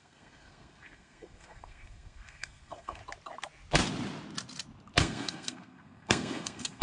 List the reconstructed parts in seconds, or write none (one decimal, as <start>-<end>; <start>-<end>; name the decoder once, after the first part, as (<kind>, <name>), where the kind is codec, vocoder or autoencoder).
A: 0.0-3.0 (codec, SNAC); 5.0-6.8